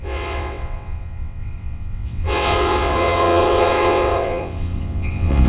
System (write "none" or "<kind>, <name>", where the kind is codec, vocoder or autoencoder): vocoder, WaveNeXt